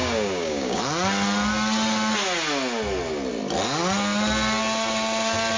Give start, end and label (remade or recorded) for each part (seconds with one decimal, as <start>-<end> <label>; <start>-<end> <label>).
0.0-0.8 remade; 0.8-5.6 recorded